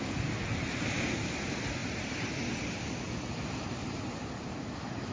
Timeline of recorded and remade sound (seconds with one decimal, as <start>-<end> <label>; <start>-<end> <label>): 0.0-5.1 recorded